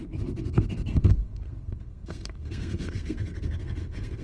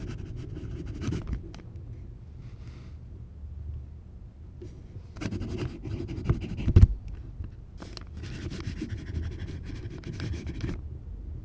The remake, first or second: first